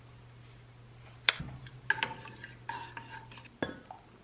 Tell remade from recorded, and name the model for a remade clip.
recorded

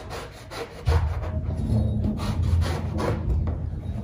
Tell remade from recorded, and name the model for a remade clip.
recorded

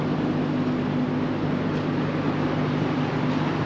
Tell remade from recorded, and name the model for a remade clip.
recorded